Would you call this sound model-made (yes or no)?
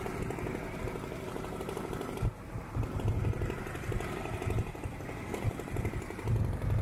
yes